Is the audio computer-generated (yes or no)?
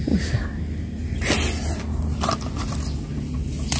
no